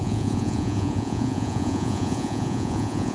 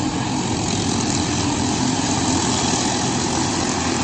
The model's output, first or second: first